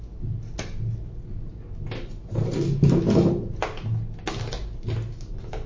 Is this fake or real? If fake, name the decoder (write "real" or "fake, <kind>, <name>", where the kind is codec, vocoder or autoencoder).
real